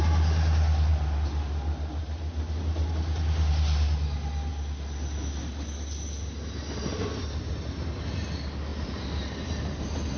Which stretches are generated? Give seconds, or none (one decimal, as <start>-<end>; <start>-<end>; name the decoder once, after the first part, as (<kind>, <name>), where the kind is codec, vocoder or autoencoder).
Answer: 8.7-10.2 (vocoder, BigVGAN v2)